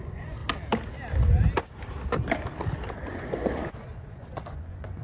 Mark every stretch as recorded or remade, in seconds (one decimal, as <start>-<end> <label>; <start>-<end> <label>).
0.0-0.4 remade; 0.4-2.9 recorded; 2.9-5.0 remade